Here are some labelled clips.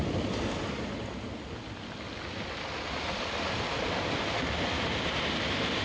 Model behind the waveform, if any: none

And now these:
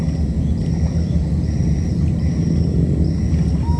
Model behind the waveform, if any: none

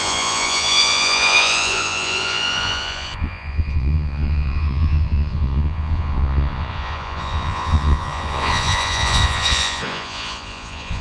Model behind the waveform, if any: vocoder, Vocos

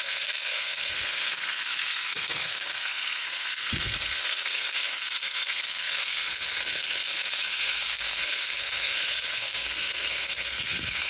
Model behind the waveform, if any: codec, SNAC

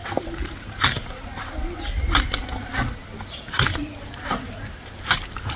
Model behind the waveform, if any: none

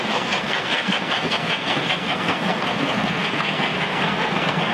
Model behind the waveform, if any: codec, SNAC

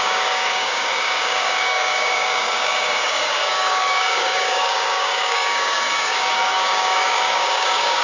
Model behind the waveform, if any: codec, DAC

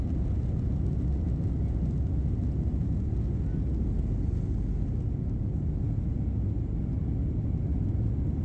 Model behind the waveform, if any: none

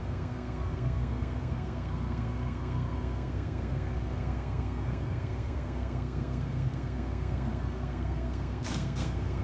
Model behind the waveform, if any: codec, SNAC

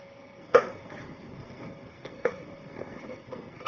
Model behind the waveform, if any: codec, SNAC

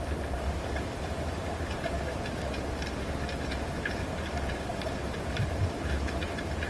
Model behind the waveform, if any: none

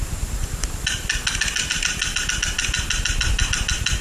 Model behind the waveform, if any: none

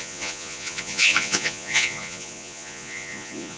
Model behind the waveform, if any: vocoder, Vocos